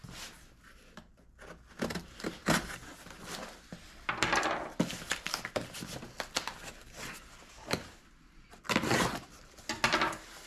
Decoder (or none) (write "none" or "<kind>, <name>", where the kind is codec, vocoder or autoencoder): none